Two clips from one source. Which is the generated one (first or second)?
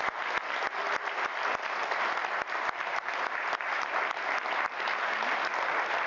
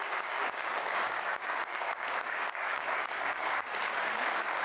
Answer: second